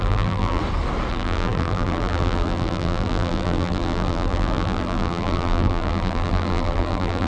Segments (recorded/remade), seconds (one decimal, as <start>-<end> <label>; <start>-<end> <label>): 0.0-0.6 remade; 0.6-1.1 recorded; 1.1-7.3 remade